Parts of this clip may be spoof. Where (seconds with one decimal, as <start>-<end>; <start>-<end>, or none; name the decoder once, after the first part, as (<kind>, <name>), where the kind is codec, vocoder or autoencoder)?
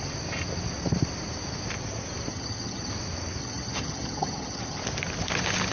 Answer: 2.3-2.9 (vocoder, HiFi-GAN); 3.4-4.8